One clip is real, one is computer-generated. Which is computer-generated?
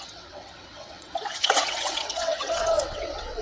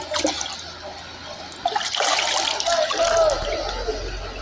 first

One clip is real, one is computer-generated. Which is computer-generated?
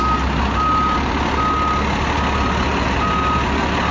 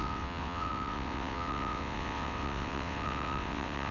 second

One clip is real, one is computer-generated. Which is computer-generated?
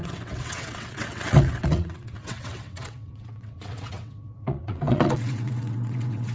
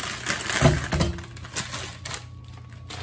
first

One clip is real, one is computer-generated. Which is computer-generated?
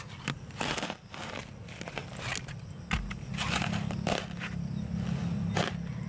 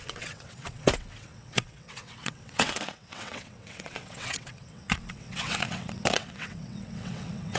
second